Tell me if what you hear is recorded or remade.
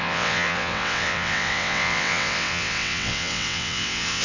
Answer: remade